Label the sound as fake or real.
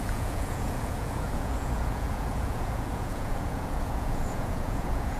fake